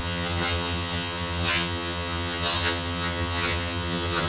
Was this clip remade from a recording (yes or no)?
yes